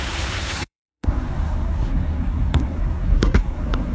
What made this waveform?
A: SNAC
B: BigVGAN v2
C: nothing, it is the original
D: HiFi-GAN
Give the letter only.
A